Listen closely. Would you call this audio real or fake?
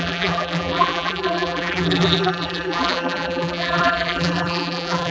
fake